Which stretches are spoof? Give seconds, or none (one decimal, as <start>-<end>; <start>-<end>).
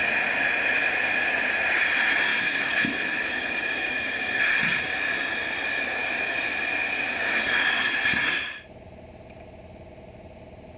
2.3-4.4